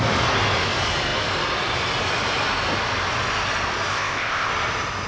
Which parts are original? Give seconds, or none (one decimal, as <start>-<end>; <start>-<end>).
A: 0.0-3.9; 4.5-5.1